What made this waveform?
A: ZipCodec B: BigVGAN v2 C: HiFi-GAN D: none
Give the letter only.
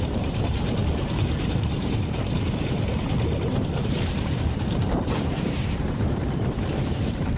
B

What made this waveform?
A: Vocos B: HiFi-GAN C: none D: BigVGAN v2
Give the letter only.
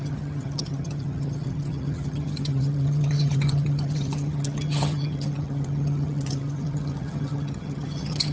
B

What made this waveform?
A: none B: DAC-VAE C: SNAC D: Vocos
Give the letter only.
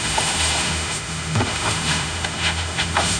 B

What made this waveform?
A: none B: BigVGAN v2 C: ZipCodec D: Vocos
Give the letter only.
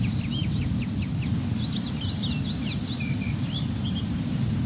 B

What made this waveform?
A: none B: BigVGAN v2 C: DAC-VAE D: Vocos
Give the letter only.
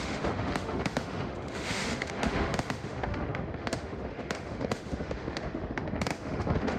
C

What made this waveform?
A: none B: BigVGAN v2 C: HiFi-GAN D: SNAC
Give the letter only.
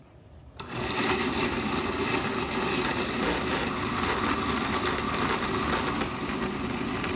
A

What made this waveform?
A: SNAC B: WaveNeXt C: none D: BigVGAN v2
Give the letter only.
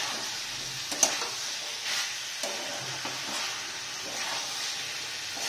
C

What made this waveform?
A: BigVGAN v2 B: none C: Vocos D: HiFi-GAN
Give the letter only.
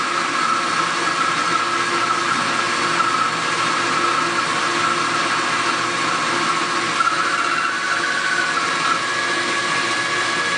B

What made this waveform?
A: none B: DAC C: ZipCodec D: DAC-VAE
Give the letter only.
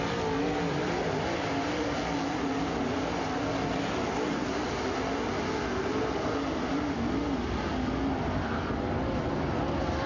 A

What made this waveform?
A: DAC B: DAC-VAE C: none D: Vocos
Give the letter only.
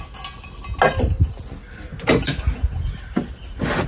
C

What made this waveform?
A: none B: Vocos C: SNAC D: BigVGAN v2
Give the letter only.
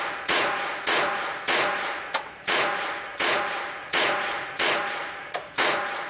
B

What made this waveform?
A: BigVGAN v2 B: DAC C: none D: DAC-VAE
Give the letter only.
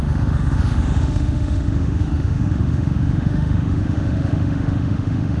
D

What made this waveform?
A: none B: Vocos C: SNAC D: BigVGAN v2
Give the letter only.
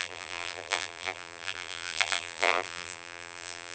D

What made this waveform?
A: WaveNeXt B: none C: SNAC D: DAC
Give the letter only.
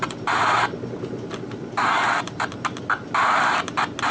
B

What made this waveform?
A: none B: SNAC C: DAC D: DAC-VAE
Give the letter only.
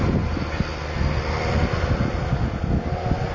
A